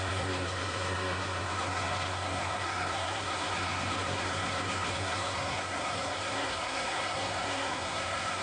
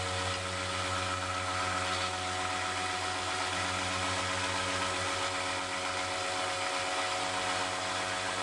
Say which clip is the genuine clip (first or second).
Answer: second